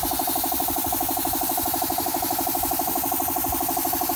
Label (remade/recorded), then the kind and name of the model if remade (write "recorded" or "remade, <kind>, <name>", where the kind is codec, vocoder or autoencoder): recorded